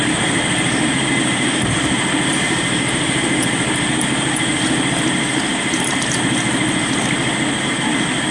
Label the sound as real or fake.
real